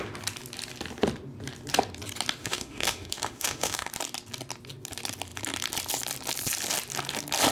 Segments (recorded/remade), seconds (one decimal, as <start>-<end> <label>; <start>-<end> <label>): 0.0-2.4 recorded; 2.4-3.9 remade; 3.9-7.5 recorded